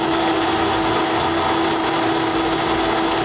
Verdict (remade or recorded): recorded